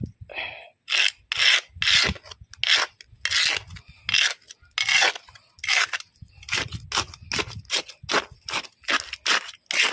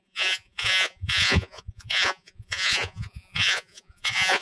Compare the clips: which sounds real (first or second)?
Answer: first